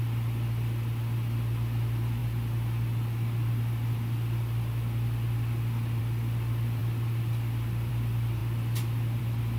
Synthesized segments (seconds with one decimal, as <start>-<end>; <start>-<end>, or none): none